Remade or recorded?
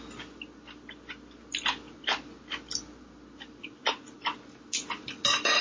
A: recorded